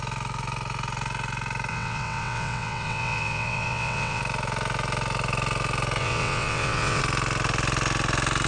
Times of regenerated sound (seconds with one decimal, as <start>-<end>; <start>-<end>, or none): 1.7-4.2; 6.0-7.0